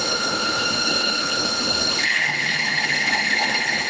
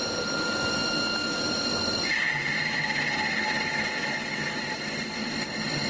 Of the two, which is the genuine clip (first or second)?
second